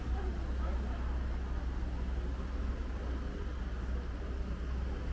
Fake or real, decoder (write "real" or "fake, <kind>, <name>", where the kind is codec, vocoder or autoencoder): real